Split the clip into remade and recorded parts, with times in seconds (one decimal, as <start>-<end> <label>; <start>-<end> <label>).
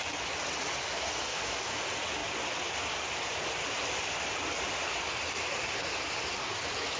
0.0-1.3 recorded; 1.3-1.8 remade; 1.8-7.0 recorded